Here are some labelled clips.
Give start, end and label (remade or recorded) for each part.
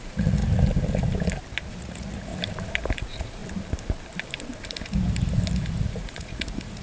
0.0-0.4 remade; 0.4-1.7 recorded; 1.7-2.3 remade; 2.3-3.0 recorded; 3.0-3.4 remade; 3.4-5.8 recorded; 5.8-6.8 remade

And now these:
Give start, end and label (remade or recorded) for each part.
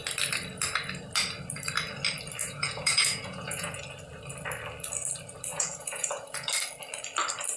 0.0-2.4 recorded; 2.4-3.8 remade; 3.8-5.5 recorded; 5.5-6.5 remade; 6.5-7.6 recorded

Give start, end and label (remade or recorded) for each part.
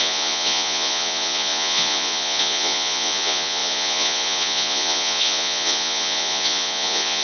0.0-7.2 remade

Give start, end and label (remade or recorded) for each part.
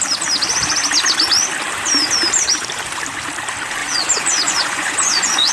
0.0-3.8 recorded; 3.8-5.5 remade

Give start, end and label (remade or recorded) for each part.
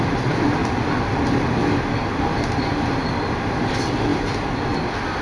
0.0-5.2 recorded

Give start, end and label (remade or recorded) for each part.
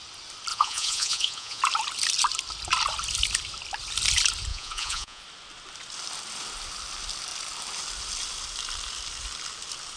0.0-0.5 recorded; 0.5-1.6 remade; 1.6-4.5 recorded; 4.5-5.2 remade; 5.2-10.0 recorded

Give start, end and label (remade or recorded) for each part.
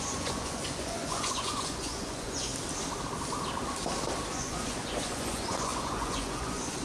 0.0-2.5 remade; 2.5-4.3 recorded; 4.3-6.8 remade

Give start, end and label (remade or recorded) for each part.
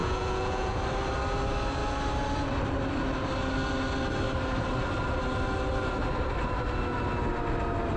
0.0-0.8 remade; 0.8-8.0 recorded